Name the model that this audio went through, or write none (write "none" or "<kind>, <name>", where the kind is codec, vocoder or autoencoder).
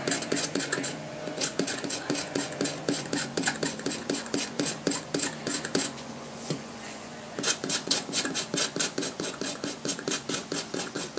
vocoder, Vocos